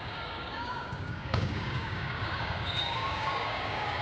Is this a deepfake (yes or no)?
yes